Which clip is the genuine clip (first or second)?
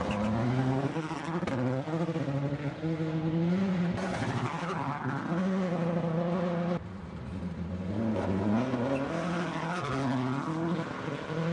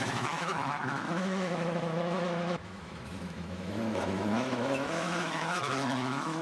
first